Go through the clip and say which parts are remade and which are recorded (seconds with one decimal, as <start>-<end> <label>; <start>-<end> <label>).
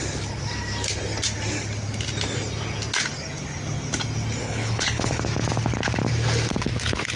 0.0-4.4 recorded; 4.4-5.2 remade; 5.2-7.2 recorded